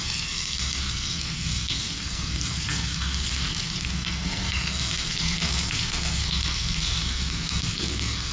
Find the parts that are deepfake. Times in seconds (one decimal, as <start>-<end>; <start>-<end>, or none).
0.0-8.3